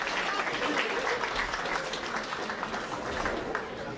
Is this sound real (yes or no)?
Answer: yes